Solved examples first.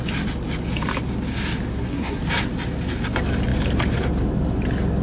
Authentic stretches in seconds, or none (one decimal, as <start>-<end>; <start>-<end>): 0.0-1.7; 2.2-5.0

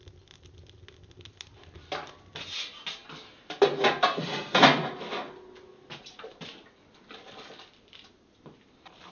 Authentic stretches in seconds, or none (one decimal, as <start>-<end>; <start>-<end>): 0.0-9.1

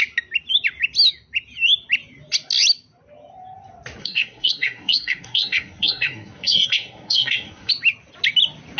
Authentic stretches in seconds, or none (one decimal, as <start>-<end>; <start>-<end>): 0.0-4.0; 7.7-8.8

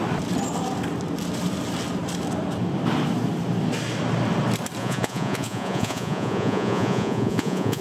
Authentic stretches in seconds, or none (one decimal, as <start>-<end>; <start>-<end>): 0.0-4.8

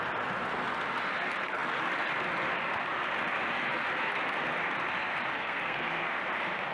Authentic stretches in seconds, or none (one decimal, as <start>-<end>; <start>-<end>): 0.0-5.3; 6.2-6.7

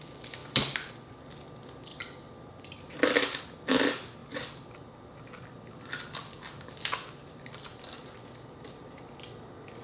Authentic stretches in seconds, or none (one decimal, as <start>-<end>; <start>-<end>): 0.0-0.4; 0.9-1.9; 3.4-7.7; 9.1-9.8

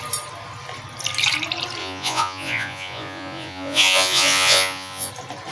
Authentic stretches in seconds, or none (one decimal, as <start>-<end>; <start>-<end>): 0.0-1.8; 5.1-5.5